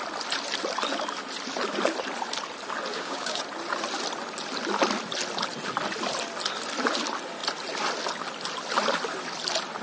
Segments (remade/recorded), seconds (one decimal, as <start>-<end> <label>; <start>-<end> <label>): 0.0-2.9 recorded; 2.9-3.4 remade; 3.4-9.8 recorded